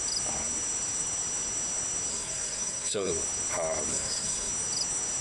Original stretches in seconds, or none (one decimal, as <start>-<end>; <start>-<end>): 0.0-2.1; 3.1-3.9; 4.5-5.2